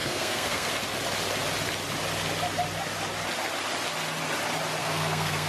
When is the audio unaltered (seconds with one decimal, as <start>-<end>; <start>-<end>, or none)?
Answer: 0.7-4.8